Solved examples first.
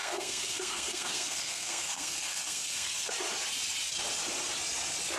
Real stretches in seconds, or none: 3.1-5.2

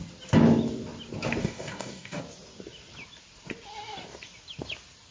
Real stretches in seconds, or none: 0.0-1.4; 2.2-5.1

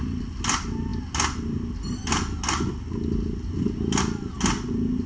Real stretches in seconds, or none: 0.0-5.1

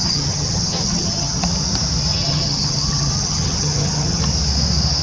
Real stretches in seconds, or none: 1.4-2.1; 4.2-5.0

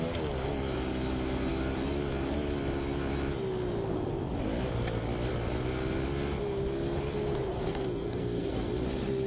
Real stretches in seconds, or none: 0.0-7.5; 8.7-9.3